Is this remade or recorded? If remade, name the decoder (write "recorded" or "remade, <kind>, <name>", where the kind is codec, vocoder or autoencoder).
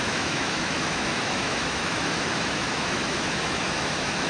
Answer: remade, autoencoder, DAC-VAE